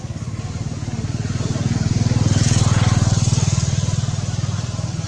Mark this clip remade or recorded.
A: recorded